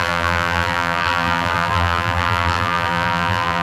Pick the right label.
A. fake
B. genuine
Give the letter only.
A